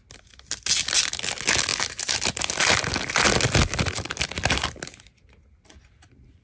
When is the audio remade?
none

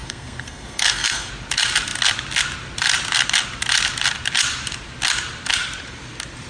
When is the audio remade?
0.0-1.3 (codec, SNAC)